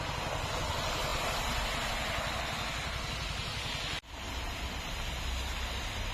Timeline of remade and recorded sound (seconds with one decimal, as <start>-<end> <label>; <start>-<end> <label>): 0.0-6.1 recorded